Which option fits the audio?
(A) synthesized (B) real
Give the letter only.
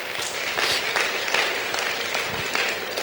B